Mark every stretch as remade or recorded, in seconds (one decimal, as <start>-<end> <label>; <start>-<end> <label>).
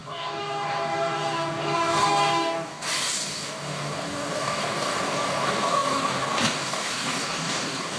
0.0-8.0 remade